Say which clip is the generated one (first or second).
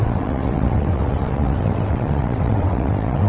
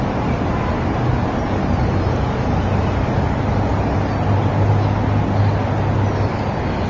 first